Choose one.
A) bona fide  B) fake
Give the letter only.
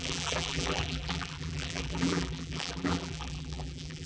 B